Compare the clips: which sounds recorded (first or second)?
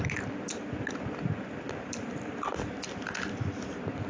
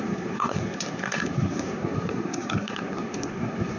first